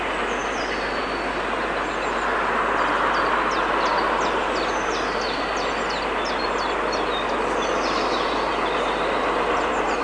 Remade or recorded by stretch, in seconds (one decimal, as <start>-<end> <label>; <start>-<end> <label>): 0.0-10.0 recorded